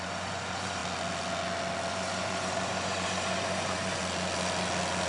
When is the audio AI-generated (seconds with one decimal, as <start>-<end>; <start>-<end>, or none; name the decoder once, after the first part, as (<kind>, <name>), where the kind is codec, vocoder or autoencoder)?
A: 0.0-0.8 (vocoder, Vocos); 1.9-4.0